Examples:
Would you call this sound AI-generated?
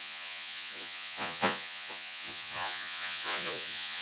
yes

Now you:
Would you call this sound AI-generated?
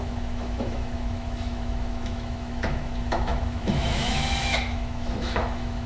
yes